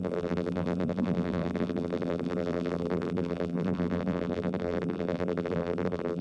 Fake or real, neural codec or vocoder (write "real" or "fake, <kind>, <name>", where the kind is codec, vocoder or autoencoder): fake, vocoder, BigVGAN v2